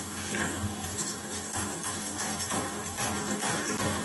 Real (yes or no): no